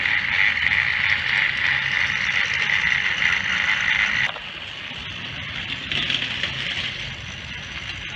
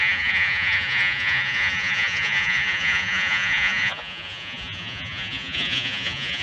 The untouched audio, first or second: first